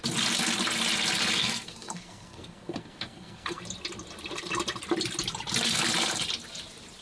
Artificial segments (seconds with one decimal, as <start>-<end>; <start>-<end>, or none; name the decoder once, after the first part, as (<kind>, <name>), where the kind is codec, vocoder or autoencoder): 1.4-3.6 (codec, SNAC)